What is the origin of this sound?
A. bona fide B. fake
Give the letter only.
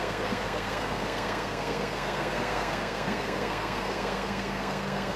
B